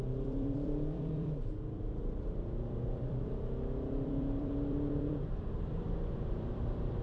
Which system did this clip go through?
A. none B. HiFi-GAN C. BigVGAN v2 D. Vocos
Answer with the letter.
C